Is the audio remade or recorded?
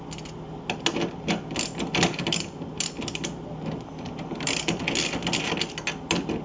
recorded